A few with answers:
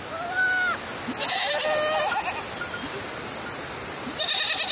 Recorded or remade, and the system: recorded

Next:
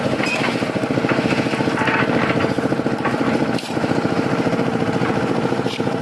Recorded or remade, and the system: remade, vocoder, BigVGAN v2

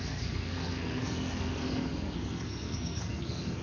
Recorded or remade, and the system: remade, codec, SNAC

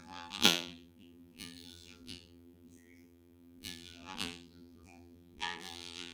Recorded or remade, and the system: remade, vocoder, BigVGAN v2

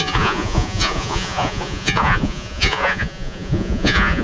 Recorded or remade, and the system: remade, vocoder, Vocos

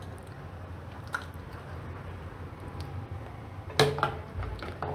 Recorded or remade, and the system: recorded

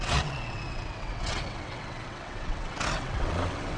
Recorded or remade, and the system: remade, vocoder, WaveNeXt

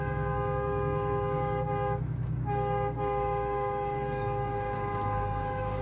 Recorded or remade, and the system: remade, codec, DAC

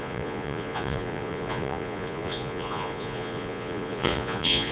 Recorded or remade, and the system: remade, vocoder, Vocos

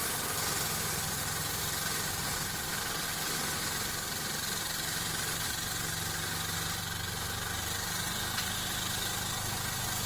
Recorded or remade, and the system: recorded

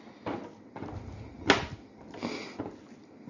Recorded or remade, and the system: recorded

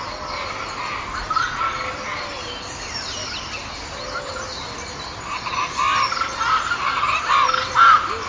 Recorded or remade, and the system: recorded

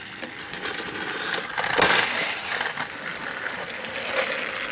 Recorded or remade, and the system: remade, vocoder, BigVGAN v2